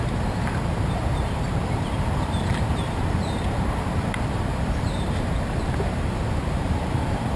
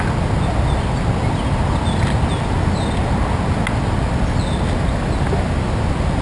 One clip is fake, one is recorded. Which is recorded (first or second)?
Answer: second